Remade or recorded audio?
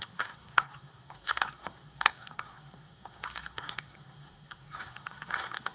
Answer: remade